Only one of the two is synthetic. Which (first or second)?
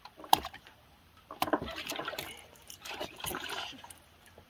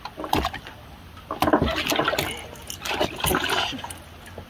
first